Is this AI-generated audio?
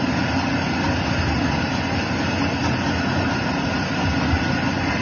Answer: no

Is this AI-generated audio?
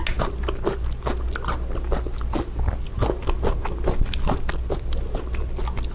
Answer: no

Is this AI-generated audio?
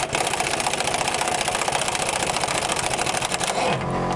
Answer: no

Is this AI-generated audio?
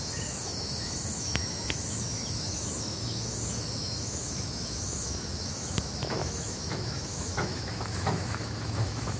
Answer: yes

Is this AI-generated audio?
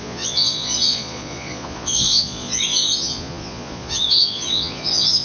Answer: yes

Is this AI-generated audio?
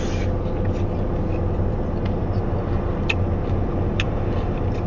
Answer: no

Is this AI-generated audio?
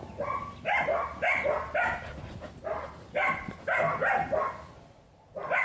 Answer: no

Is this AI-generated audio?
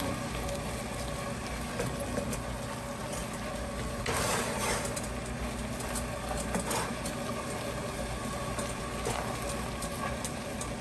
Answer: no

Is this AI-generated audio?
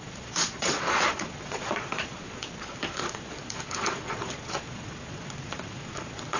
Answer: yes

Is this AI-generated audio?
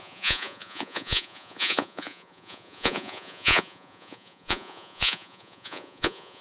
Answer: yes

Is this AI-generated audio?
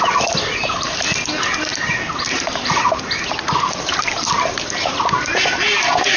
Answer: no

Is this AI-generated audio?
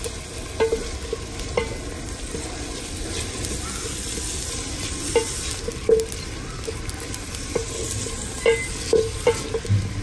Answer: no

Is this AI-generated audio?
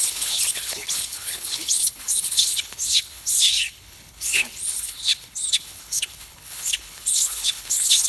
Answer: yes